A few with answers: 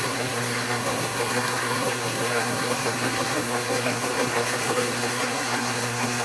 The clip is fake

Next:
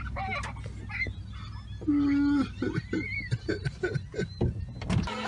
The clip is real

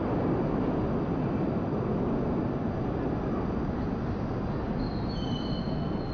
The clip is real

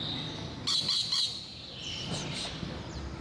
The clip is real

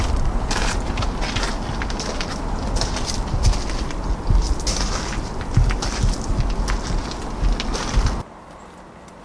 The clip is real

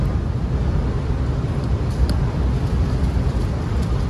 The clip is real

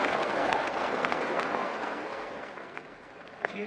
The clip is fake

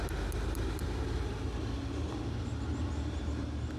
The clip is real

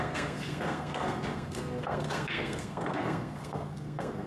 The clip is fake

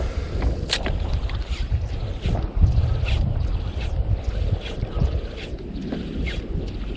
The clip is real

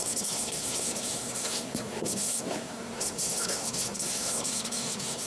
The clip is fake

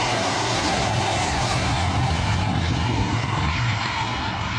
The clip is fake